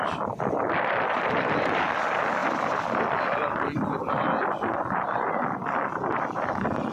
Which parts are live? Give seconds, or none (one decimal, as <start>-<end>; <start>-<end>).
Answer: none